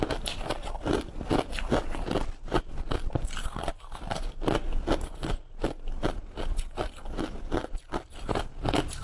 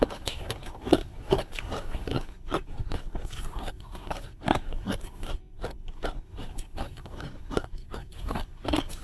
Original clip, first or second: first